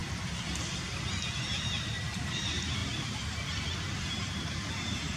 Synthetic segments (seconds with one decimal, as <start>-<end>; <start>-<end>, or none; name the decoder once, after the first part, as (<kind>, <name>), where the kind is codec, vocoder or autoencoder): 1.4-2.8 (vocoder, BigVGAN v2); 4.1-5.2